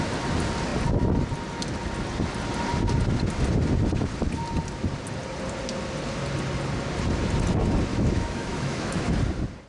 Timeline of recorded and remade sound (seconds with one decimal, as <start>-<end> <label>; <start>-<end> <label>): 0.0-7.9 recorded; 7.9-9.2 remade; 9.2-9.7 recorded